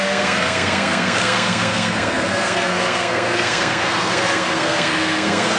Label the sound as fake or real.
fake